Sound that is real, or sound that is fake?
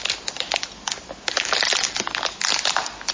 real